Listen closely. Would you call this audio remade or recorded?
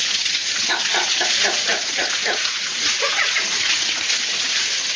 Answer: remade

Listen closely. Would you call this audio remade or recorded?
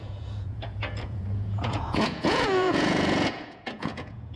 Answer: remade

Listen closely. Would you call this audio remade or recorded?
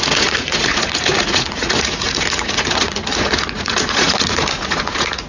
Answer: remade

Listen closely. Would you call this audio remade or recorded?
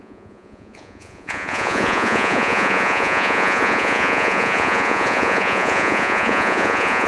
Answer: remade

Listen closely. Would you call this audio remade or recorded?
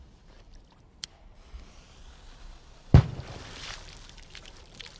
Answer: recorded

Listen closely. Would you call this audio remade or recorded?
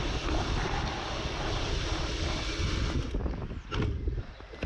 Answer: recorded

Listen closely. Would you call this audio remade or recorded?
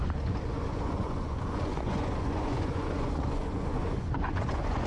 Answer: remade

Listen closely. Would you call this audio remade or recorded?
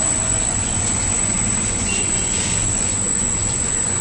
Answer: remade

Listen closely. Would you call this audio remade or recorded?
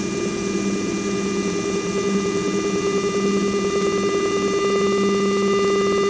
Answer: recorded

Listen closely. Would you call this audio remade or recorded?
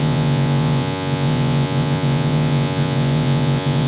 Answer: remade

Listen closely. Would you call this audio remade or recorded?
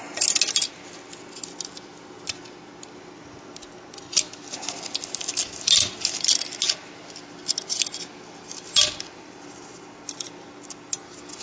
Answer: recorded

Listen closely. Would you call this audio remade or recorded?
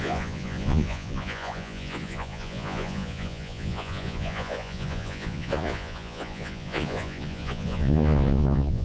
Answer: remade